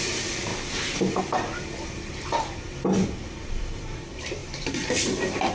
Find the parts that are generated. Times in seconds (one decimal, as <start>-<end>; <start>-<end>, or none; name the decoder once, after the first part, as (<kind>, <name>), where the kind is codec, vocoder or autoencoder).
0.0-0.5 (vocoder, BigVGAN v2); 3.4-5.5